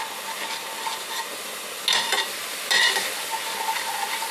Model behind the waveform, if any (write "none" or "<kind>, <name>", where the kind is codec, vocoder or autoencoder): none